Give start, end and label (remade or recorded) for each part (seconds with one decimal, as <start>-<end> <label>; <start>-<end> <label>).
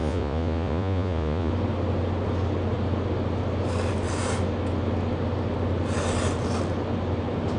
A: 0.0-1.5 remade; 1.5-7.6 recorded